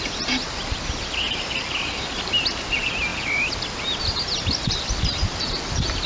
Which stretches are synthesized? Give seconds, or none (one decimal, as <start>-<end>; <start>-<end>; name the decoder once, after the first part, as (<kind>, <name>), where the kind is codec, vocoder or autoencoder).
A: none